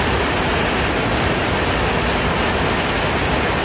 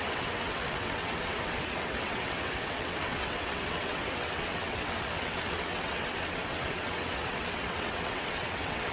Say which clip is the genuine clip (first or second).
first